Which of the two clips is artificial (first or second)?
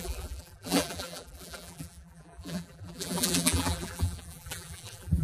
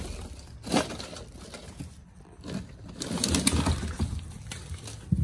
first